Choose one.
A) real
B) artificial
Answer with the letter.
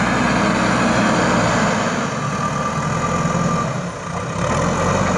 A